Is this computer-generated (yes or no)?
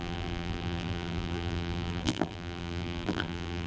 yes